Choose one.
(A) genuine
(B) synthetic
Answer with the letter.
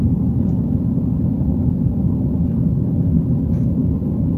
A